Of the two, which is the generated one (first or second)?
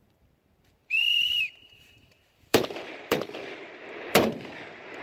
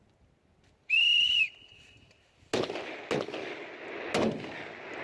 first